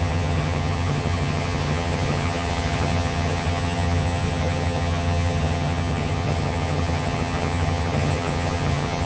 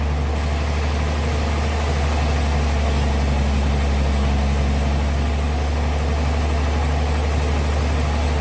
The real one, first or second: second